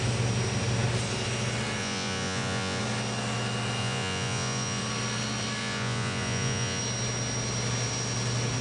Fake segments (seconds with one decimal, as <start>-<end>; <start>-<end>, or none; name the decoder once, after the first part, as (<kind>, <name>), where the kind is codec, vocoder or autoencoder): 1.8-2.8 (vocoder, Vocos); 3.8-4.8; 5.6-6.8